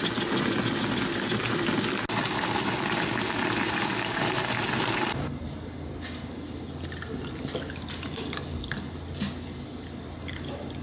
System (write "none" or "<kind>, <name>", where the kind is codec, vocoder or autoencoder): none